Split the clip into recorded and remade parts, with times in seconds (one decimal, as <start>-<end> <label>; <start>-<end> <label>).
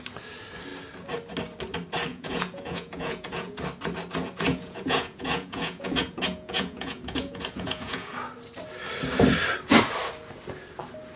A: 0.0-2.1 recorded; 2.1-3.6 remade; 3.6-4.5 recorded; 4.5-8.1 remade; 8.1-11.2 recorded